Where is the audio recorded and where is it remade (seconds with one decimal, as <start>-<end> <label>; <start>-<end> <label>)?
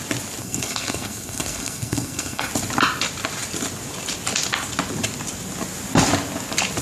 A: 0.0-0.4 recorded; 0.4-2.5 remade; 2.5-6.8 recorded